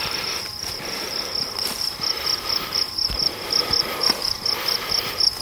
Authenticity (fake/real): fake